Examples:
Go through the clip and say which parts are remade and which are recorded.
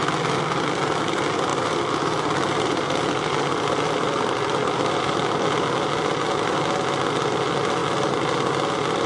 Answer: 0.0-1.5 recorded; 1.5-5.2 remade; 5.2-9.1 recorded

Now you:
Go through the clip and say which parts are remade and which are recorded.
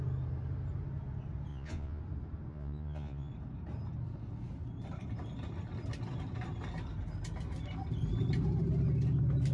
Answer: 0.0-1.5 recorded; 1.5-2.0 remade; 2.0-2.5 recorded; 2.5-3.3 remade; 3.3-9.5 recorded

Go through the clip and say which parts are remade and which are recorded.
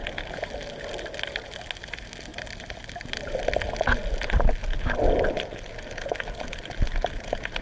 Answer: 0.0-7.6 recorded